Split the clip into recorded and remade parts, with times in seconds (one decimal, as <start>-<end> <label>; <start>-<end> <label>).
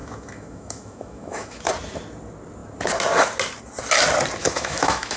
0.0-1.7 remade; 1.7-4.4 recorded; 4.4-5.2 remade